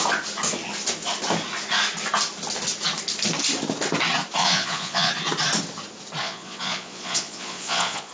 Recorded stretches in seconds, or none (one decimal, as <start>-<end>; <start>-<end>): 0.0-4.4; 5.1-6.2